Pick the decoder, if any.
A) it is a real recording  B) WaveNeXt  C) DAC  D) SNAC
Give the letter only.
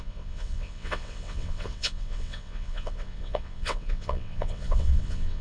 B